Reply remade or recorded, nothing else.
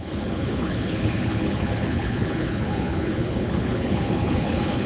remade